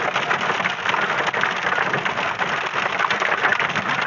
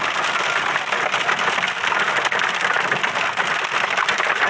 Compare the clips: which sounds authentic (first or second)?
first